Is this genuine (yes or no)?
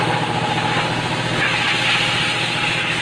yes